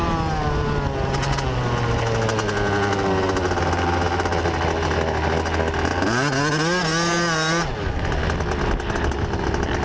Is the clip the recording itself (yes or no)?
yes